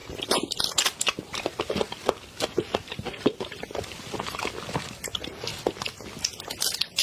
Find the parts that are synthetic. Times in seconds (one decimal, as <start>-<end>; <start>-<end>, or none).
none